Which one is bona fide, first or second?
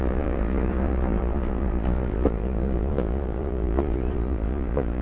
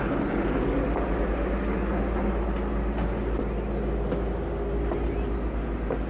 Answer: second